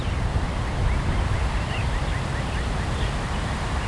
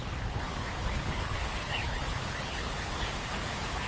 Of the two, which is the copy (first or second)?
second